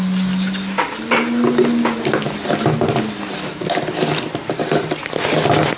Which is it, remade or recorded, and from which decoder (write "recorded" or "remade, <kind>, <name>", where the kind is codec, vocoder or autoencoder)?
recorded